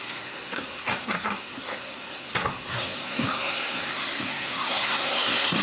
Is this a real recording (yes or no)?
no